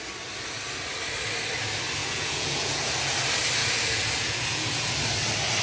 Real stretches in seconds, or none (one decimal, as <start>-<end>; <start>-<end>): 0.0-2.0; 2.9-3.6; 4.9-5.6

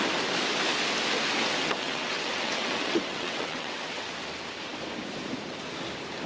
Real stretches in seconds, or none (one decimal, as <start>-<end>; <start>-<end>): 0.0-1.6; 4.1-6.3

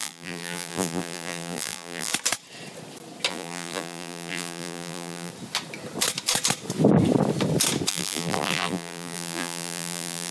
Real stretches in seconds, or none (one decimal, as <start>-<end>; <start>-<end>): 2.1-3.3; 5.3-7.9

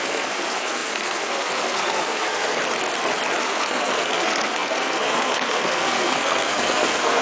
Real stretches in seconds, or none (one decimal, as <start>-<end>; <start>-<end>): 2.6-3.4

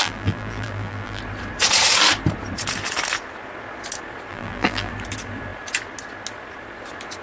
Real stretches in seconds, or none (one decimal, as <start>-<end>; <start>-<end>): 1.2-4.3; 4.9-7.2

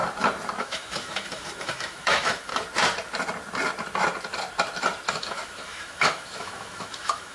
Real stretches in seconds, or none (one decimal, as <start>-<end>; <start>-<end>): 0.0-0.6; 2.5-5.1